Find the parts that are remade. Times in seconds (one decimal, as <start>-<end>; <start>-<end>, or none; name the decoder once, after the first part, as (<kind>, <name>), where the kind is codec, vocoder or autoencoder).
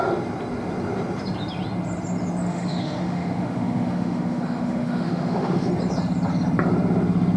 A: 2.5-5.7 (autoencoder, DAC-VAE)